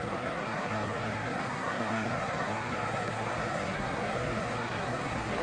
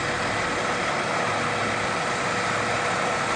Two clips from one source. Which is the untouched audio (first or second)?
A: second